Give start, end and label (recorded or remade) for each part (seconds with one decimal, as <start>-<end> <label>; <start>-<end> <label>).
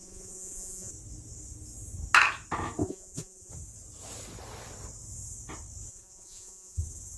0.0-0.9 remade; 0.9-2.8 recorded; 2.8-3.5 remade; 3.5-5.9 recorded; 5.9-6.8 remade; 6.8-7.2 recorded